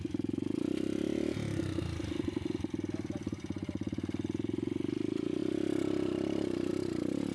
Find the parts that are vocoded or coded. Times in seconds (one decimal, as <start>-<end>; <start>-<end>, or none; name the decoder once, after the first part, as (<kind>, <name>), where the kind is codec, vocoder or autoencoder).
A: none